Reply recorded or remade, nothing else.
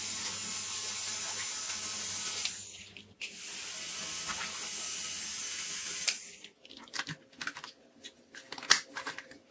recorded